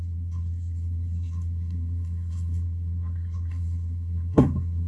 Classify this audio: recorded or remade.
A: remade